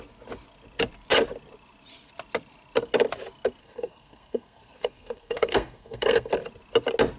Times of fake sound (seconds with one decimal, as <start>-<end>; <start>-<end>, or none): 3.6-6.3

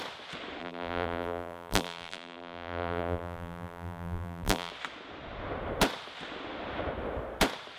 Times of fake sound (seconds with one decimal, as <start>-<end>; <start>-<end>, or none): 0.6-4.7

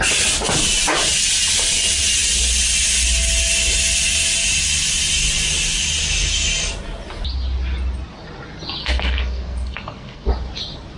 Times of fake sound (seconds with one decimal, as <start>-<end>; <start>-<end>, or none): 8.8-10.3

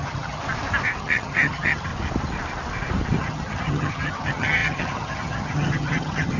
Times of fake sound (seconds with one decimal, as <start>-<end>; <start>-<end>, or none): 0.0-0.4; 1.0-1.9; 3.2-6.4

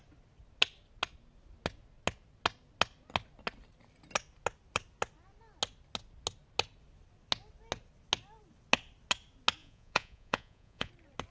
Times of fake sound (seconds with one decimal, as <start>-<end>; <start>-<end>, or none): 9.6-10.9